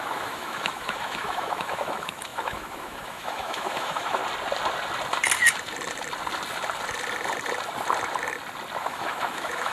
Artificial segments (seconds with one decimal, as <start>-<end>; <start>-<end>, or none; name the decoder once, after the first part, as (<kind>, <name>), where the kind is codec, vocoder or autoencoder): 0.0-4.2 (autoencoder, DAC-VAE); 8.8-9.7